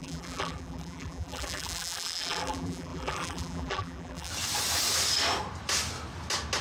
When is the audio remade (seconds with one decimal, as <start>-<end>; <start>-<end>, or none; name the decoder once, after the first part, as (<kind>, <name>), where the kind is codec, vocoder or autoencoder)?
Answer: 0.0-4.3 (vocoder, BigVGAN v2)